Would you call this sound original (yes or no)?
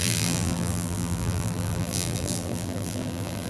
no